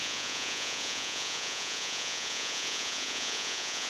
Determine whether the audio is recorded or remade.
remade